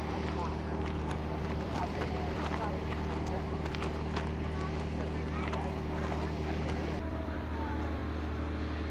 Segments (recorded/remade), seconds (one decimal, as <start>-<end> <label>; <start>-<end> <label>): 0.0-8.0 remade; 8.0-8.9 recorded